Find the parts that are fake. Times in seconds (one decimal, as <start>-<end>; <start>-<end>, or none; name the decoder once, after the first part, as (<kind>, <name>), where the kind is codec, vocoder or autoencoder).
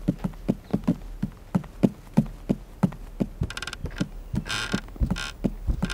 none